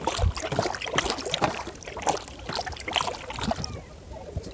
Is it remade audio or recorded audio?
recorded